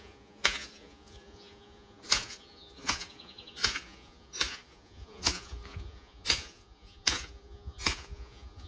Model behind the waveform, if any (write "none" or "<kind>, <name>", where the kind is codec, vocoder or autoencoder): vocoder, Vocos